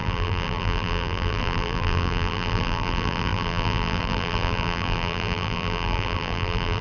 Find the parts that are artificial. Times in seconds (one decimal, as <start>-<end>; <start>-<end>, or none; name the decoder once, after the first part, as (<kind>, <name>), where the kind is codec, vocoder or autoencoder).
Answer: 0.0-6.8 (vocoder, BigVGAN v2)